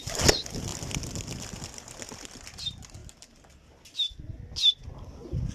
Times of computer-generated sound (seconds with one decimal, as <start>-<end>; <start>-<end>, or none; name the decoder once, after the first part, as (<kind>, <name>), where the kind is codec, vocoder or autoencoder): none